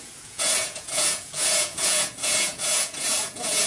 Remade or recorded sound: remade